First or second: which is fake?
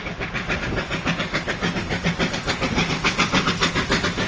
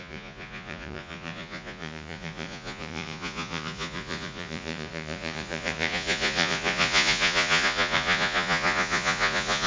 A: second